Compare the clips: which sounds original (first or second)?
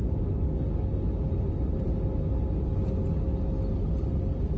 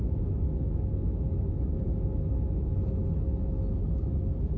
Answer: first